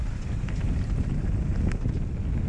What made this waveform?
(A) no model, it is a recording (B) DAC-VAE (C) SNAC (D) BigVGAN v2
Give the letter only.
A